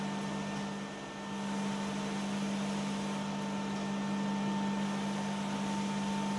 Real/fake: real